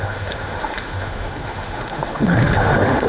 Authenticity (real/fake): fake